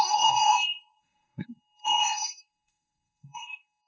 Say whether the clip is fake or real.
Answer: fake